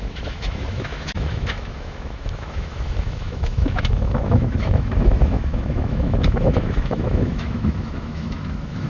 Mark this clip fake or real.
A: fake